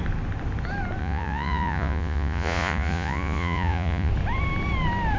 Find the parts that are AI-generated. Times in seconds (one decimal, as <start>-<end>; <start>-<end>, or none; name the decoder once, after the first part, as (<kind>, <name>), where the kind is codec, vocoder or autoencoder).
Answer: 1.0-4.1 (vocoder, Vocos)